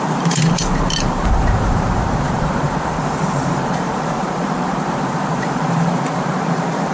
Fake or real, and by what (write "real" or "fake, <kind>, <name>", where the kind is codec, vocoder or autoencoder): fake, vocoder, BigVGAN v2